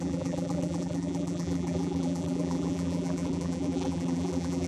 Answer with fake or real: fake